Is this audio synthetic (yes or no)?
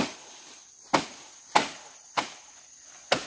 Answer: no